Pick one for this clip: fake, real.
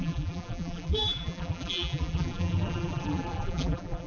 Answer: fake